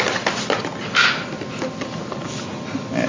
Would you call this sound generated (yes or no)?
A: no